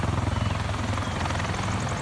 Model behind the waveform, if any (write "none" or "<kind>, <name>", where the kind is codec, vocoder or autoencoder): none